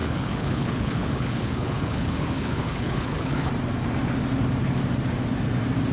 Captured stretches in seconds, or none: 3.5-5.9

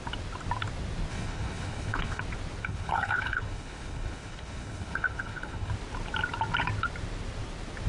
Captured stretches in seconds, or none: 0.0-1.1; 2.2-2.6; 5.7-7.9